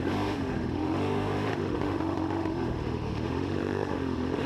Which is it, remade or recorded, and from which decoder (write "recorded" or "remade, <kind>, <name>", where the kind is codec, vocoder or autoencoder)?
remade, autoencoder, DAC-VAE